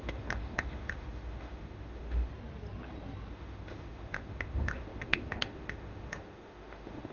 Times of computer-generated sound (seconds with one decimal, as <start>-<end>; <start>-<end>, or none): 0.0-2.3; 3.3-7.1